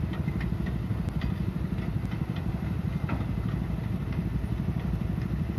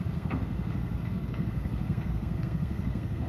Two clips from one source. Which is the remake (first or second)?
second